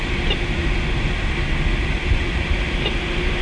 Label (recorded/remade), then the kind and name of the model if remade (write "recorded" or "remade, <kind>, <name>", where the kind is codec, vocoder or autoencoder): recorded